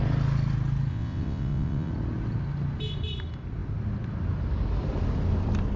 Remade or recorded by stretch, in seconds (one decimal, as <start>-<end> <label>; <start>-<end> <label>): 0.0-0.9 recorded; 0.9-1.9 remade; 1.9-5.8 recorded